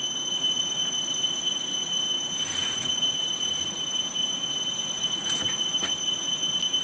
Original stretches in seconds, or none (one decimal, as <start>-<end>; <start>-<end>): 0.0-2.5; 3.1-4.8; 5.9-6.8